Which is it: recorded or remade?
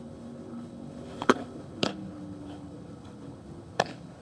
remade